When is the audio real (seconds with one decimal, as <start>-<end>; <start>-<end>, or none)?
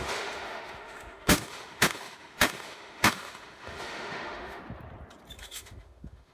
4.6-5.4